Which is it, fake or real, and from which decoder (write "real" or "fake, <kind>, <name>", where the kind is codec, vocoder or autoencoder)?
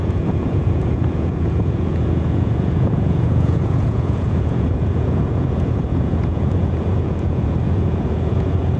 fake, vocoder, Vocos